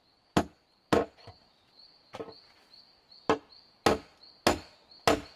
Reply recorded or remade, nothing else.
recorded